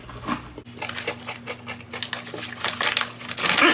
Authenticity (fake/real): real